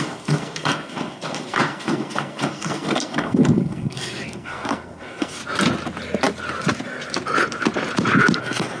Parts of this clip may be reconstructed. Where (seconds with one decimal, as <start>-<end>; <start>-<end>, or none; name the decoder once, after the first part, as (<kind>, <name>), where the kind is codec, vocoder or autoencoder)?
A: 0.0-5.4 (codec, SNAC); 8.4-8.8